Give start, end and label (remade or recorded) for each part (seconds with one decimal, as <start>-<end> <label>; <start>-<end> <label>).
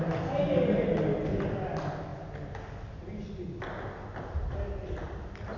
0.0-5.6 recorded